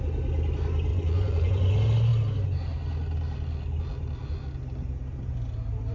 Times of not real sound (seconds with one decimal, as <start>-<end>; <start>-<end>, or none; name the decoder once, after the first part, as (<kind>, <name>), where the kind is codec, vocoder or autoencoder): 0.9-1.7 (vocoder, Vocos)